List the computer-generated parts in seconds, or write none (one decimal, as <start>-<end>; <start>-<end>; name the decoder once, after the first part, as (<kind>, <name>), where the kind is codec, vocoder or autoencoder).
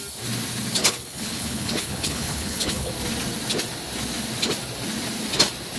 0.8-2.9 (codec, HILCodec)